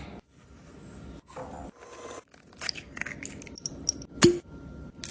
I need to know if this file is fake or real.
real